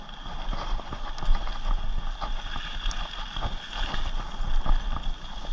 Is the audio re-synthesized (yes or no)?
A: no